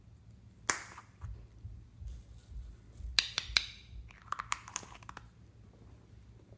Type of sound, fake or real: real